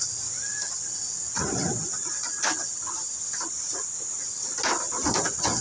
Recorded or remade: recorded